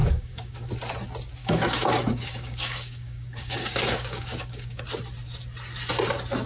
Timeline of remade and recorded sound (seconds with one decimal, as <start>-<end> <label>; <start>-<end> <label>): 0.0-0.7 remade; 0.7-1.4 recorded; 1.4-4.8 remade; 4.8-6.5 recorded